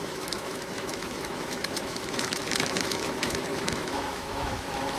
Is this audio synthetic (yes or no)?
yes